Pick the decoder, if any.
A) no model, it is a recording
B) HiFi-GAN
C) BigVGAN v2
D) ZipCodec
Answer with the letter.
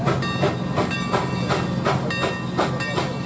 A